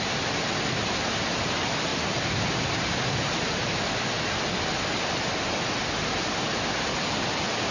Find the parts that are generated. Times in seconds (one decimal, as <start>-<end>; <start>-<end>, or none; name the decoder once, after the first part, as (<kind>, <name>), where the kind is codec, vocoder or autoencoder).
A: none